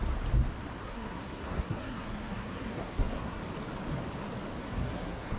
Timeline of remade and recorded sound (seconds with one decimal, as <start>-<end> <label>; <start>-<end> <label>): 0.0-0.8 recorded; 0.8-3.4 remade; 3.4-4.6 recorded; 4.6-5.4 remade